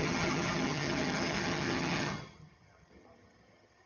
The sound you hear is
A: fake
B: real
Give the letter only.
A